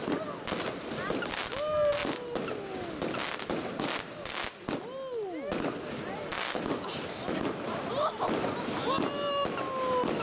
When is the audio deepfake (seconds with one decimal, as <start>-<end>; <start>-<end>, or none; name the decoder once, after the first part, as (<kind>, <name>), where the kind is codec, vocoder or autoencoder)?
none